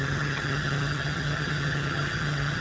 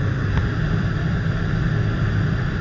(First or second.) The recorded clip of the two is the second